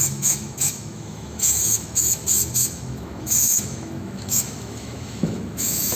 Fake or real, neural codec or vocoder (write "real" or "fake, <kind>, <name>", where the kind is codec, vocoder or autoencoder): fake, autoencoder, DAC-VAE